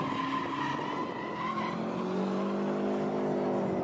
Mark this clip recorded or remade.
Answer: recorded